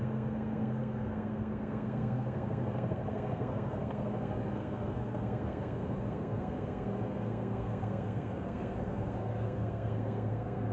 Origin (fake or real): fake